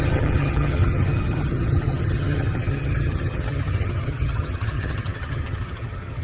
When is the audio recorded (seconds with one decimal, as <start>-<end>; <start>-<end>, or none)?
none